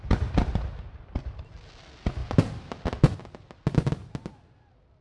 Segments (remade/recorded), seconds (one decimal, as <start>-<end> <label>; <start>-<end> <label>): 0.0-5.0 recorded